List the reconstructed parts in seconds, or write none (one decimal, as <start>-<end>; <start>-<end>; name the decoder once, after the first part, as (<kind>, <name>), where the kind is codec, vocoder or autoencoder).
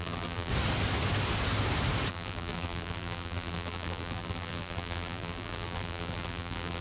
0.0-0.5 (vocoder, BigVGAN v2); 2.1-6.8